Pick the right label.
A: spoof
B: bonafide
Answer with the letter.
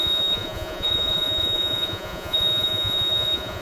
A